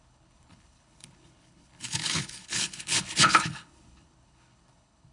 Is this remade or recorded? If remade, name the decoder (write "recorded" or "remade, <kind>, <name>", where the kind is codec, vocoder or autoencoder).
remade, codec, HILCodec